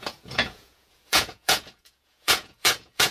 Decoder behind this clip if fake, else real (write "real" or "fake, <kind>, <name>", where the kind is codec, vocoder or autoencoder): fake, vocoder, Vocos